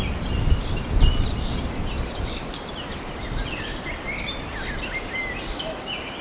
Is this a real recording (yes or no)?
yes